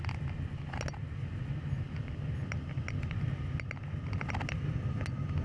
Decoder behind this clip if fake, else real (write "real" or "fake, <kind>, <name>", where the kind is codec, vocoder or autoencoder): real